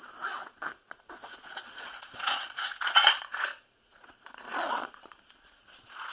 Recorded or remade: remade